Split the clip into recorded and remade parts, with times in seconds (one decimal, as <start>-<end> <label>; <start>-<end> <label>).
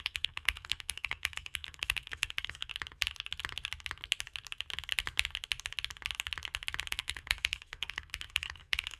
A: 0.0-2.7 remade; 2.7-6.9 recorded; 6.9-9.0 remade